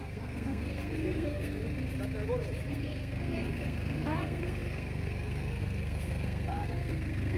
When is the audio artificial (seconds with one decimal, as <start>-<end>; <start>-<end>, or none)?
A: 0.0-1.6; 2.7-7.4